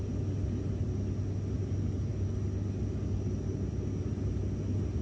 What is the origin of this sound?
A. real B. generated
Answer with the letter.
A